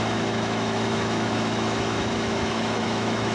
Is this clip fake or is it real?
fake